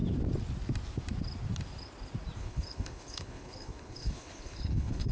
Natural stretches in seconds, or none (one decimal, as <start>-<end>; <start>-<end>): 0.0-2.4